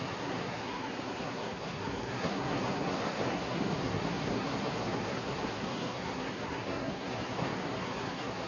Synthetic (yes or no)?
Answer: yes